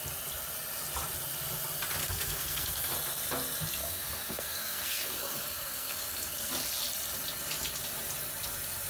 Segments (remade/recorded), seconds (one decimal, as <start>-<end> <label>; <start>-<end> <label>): 0.0-2.0 recorded; 2.0-2.9 remade; 2.9-3.8 recorded; 3.8-6.5 remade; 6.5-8.9 recorded

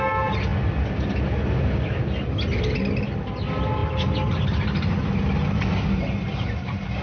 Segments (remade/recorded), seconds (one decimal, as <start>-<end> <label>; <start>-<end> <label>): 0.0-7.0 recorded

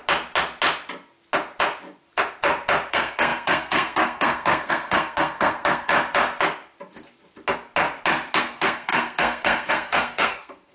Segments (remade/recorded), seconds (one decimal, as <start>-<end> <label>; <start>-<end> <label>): 0.0-2.9 recorded; 2.9-5.9 remade; 5.9-8.4 recorded; 8.4-10.7 remade

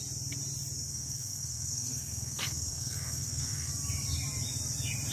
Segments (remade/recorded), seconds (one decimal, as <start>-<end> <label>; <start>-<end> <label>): 0.0-0.9 recorded; 0.9-3.7 remade; 3.7-5.1 recorded

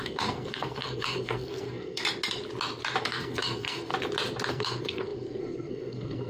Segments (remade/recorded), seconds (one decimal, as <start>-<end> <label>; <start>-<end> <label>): 0.0-2.0 remade; 2.0-3.0 recorded; 3.0-3.9 remade; 3.9-4.5 recorded; 4.5-6.3 remade

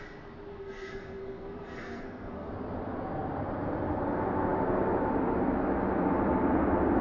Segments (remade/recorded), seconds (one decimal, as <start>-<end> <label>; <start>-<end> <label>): 0.0-0.5 recorded; 0.5-2.5 remade; 2.5-7.0 recorded